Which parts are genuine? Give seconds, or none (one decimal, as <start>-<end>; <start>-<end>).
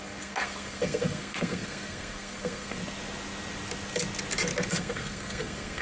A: 2.8-4.7